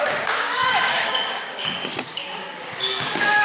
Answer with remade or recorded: remade